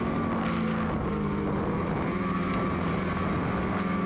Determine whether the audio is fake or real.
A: real